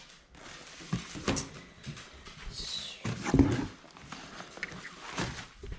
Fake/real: real